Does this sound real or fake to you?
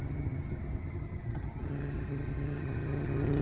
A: fake